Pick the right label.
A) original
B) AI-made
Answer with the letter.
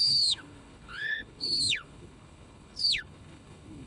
B